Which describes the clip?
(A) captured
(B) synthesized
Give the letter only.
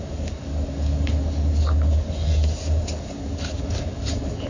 B